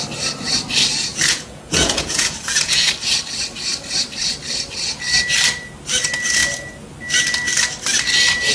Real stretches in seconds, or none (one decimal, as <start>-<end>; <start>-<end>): 0.0-1.1; 2.9-8.5